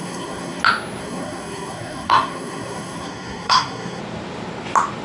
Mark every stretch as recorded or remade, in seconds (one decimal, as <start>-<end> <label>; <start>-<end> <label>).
0.0-0.6 remade; 0.6-1.0 recorded; 1.0-4.0 remade; 4.0-5.0 recorded